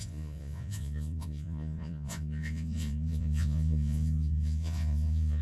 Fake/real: fake